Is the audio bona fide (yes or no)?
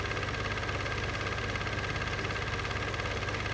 yes